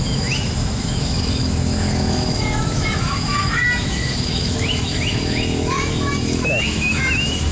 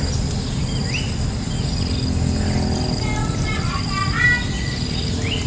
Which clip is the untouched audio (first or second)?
second